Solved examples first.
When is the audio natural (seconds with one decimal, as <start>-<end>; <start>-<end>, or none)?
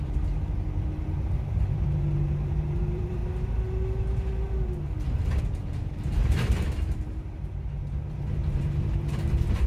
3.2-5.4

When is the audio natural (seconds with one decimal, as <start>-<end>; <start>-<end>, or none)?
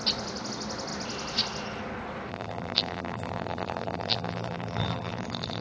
0.0-2.3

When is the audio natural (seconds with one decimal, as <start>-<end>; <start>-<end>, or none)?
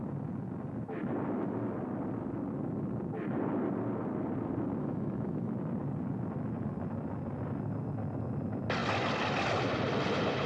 0.0-4.8; 5.5-10.5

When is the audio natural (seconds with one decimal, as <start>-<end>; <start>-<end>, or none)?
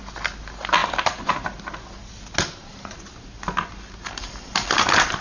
0.0-5.2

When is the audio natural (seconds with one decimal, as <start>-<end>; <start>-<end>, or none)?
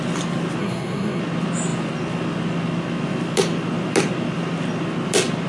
0.0-0.6; 1.2-5.5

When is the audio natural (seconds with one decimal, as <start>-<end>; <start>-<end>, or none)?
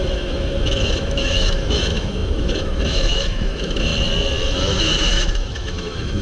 3.9-4.8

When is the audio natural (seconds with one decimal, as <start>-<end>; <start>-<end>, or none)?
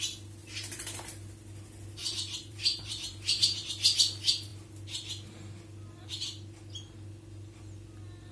0.0-0.4; 1.0-2.0; 3.7-8.3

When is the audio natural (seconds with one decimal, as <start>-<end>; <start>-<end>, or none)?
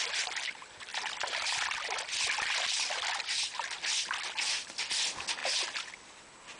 0.0-6.6